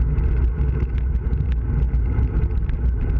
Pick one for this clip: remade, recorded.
recorded